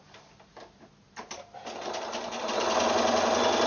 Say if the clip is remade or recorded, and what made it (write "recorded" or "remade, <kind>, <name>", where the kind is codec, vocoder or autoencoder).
recorded